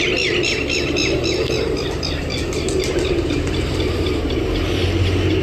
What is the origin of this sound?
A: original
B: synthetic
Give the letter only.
A